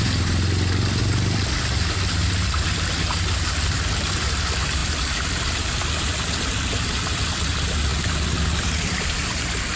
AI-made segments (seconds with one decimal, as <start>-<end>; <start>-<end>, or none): 0.0-1.0; 3.4-7.9; 8.6-9.8

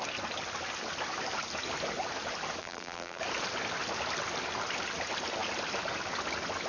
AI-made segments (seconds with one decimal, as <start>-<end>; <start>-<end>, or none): 2.6-3.2

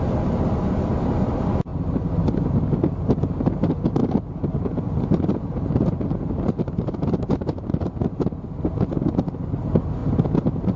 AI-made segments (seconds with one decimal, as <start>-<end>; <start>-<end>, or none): 1.7-2.4; 4.0-6.6